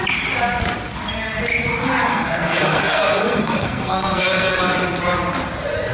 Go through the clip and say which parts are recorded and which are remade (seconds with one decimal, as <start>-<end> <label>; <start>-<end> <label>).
0.0-2.1 recorded; 2.1-4.6 remade; 4.6-5.9 recorded